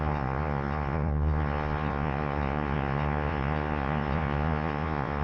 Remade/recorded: remade